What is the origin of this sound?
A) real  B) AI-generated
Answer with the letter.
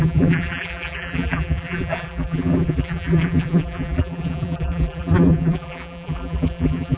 B